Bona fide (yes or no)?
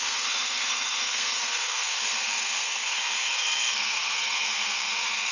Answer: no